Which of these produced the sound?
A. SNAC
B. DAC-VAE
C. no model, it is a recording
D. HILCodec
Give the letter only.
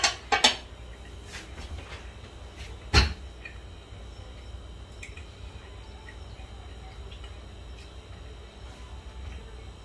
C